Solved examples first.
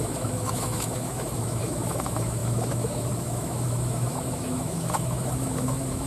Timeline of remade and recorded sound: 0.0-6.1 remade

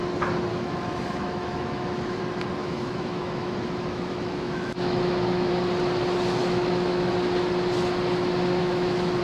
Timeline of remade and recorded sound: 0.0-0.5 recorded; 0.5-2.2 remade; 2.2-2.6 recorded; 2.6-5.5 remade; 5.5-6.4 recorded; 6.4-7.1 remade; 7.1-8.6 recorded; 8.6-9.2 remade

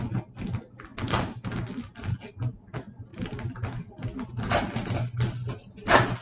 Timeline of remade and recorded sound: 0.0-6.2 recorded

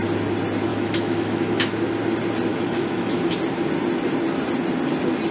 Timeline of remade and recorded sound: 0.0-0.7 recorded; 0.7-1.7 remade; 1.7-2.5 recorded; 2.5-3.2 remade; 3.2-5.3 recorded

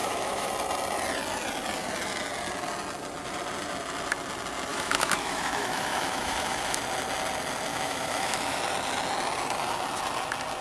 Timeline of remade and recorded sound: 0.0-0.5 remade; 0.5-4.7 recorded; 4.7-6.8 remade; 6.8-7.7 recorded; 7.7-8.6 remade; 8.6-10.6 recorded

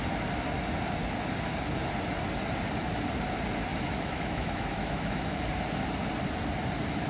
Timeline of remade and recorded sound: 0.0-3.7 recorded; 3.7-5.4 remade; 5.4-7.1 recorded

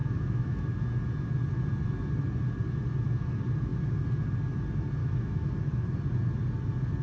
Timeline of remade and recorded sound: 0.0-0.6 remade; 0.6-5.0 recorded; 5.0-5.5 remade; 5.5-7.0 recorded